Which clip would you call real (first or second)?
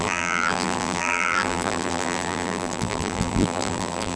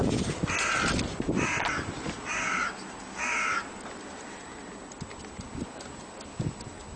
second